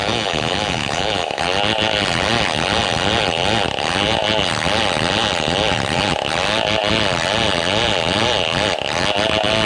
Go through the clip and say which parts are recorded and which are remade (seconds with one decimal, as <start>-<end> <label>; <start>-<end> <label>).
0.0-1.4 remade; 1.4-9.7 recorded